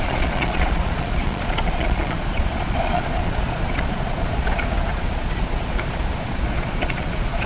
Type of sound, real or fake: fake